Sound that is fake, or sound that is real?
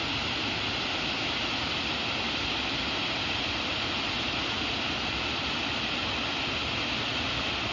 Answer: real